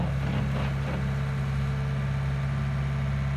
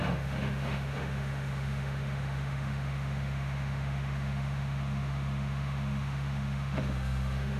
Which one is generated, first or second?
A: second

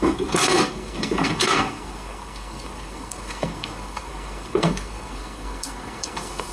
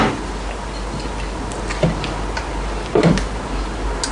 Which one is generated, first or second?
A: first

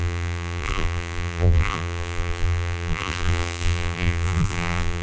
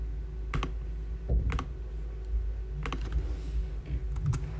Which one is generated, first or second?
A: first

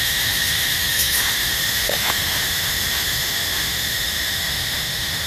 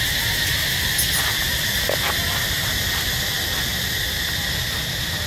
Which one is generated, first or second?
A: first